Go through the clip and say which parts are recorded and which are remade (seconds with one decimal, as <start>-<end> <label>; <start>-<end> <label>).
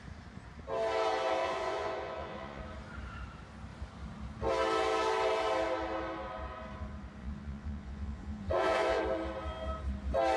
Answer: 0.0-1.4 recorded; 1.4-2.6 remade; 2.6-7.2 recorded; 7.2-9.0 remade; 9.0-10.4 recorded